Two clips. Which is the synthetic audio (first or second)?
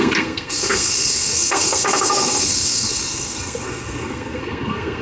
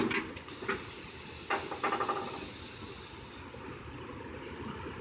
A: first